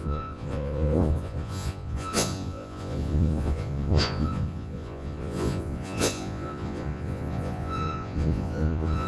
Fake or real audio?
fake